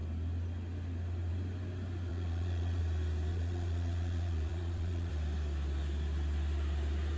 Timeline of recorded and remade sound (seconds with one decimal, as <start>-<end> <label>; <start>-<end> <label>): 0.0-2.1 recorded; 2.1-2.8 remade; 2.8-3.3 recorded; 3.3-5.1 remade; 5.1-7.2 recorded